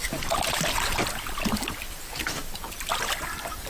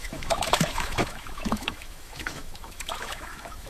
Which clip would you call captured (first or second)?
first